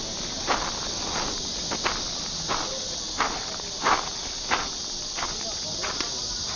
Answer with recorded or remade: recorded